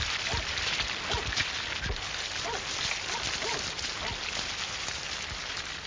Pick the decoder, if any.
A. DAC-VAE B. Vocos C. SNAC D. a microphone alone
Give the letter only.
D